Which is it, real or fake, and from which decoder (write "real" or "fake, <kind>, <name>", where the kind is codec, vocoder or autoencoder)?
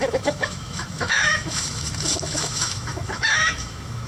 fake, autoencoder, DAC-VAE